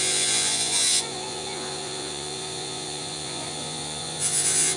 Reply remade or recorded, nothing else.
remade